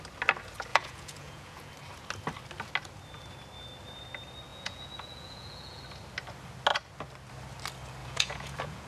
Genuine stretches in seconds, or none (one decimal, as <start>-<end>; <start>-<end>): 0.0-0.7; 1.7-4.5; 5.8-8.0